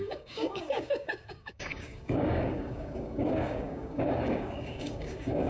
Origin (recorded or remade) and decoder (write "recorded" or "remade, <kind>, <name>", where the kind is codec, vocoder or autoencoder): remade, codec, DAC